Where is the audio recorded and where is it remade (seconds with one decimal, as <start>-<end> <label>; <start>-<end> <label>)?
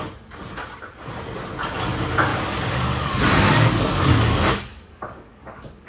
0.0-2.3 recorded; 2.3-5.9 remade